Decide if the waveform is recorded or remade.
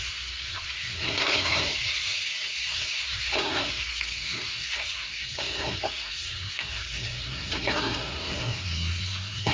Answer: remade